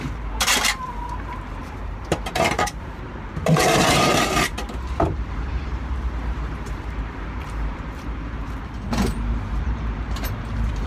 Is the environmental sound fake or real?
fake